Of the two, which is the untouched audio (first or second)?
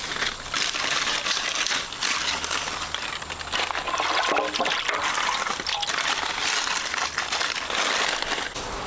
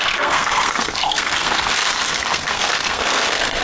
first